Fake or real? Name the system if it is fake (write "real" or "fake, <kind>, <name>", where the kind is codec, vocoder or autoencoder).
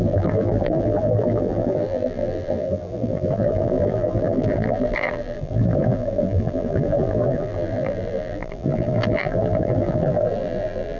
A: fake, vocoder, BigVGAN v2